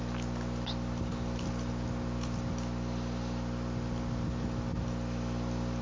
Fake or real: real